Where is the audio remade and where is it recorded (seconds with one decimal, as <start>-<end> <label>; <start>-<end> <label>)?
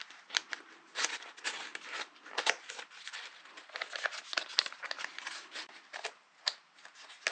0.0-7.3 recorded